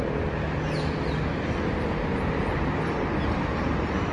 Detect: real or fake real